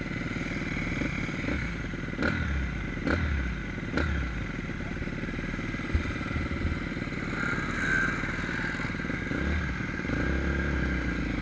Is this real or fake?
real